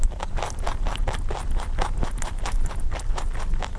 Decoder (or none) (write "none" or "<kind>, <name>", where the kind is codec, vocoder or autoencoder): none